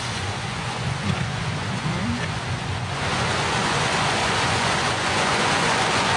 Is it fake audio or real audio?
fake